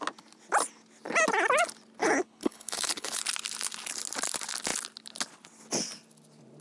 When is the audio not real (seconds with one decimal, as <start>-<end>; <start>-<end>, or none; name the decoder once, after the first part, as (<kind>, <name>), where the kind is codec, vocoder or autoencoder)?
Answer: 2.0-3.2 (codec, HILCodec)